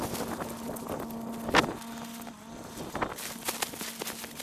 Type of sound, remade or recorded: recorded